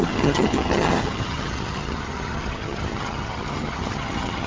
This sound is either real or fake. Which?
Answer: fake